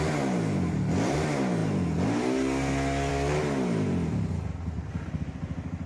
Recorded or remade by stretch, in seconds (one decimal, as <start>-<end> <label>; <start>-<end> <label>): 0.0-5.9 recorded